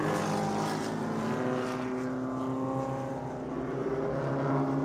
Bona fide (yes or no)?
yes